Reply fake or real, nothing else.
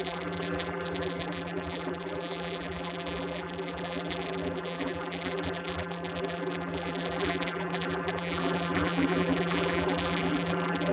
fake